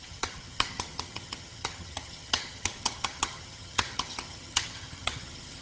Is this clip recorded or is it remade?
remade